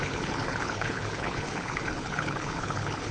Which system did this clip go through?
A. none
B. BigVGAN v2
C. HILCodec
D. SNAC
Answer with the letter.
C